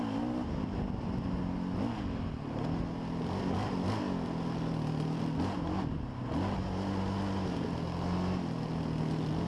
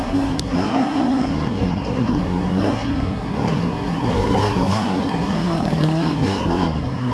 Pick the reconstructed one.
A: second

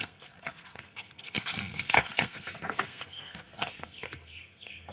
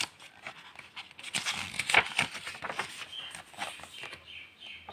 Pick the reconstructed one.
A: first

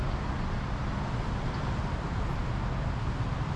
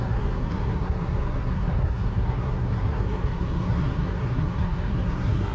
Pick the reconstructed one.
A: second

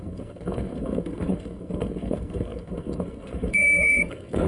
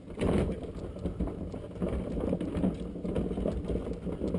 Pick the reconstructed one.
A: first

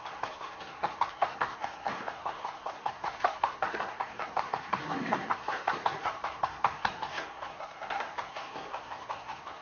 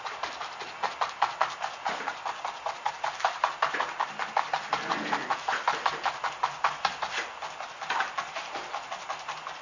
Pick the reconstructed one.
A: first